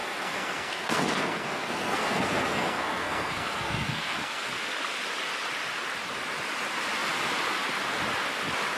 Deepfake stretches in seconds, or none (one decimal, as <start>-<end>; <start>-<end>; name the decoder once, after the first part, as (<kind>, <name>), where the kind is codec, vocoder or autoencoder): 0.0-4.5 (codec, SNAC)